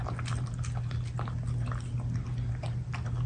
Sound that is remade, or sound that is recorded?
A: recorded